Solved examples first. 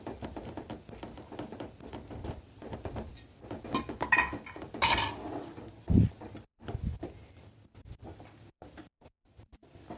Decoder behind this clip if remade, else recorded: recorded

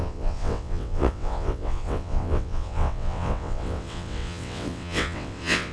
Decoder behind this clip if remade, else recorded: remade, vocoder, WaveNeXt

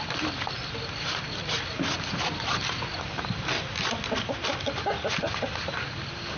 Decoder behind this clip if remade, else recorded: recorded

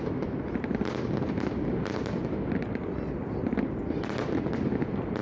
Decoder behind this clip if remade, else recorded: recorded